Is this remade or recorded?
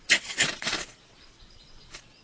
remade